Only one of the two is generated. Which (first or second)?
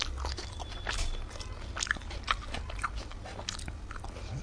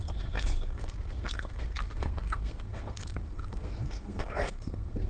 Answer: second